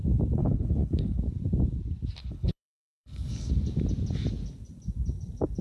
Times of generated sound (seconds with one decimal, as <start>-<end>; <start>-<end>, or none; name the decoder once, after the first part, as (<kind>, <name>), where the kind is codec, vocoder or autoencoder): 0.4-1.2 (codec, HILCodec); 2.2-3.5